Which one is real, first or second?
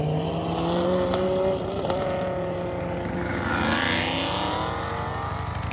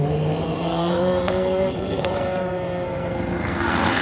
first